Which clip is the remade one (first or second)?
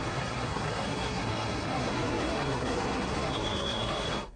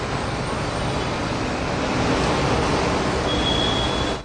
first